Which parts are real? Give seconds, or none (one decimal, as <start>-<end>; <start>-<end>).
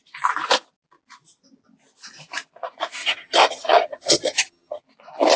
0.0-3.0; 4.8-5.4